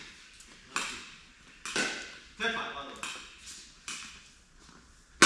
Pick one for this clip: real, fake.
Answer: real